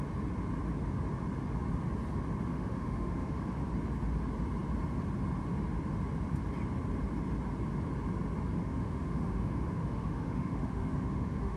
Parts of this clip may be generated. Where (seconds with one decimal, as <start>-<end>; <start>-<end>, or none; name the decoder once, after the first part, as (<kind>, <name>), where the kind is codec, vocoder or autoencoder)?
2.5-3.4 (autoencoder, DAC-VAE); 8.6-11.6